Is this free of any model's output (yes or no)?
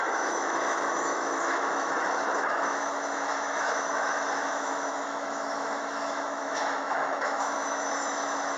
no